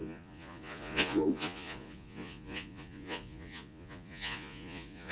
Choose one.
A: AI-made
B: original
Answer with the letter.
A